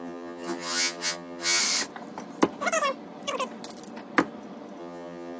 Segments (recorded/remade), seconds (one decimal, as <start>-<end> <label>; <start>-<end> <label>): 0.0-1.6 remade; 1.6-4.8 recorded; 4.8-5.4 remade